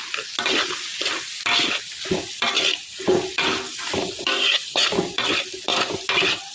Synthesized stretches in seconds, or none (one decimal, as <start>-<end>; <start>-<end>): none